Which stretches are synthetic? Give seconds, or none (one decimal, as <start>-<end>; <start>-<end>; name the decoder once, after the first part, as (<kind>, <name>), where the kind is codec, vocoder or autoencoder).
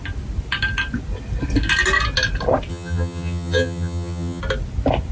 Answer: 2.7-4.4 (vocoder, HiFi-GAN)